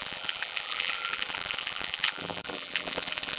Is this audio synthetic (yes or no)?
yes